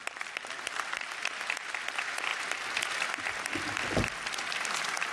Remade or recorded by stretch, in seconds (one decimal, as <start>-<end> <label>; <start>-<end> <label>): 0.0-5.1 recorded